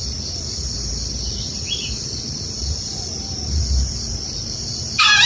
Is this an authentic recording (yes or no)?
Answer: no